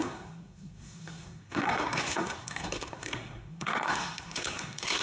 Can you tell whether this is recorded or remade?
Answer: remade